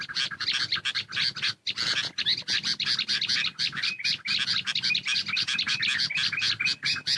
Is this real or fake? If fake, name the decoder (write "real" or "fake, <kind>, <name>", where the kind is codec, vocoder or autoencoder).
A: real